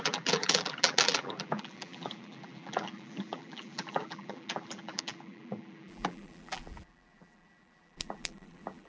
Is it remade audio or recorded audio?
remade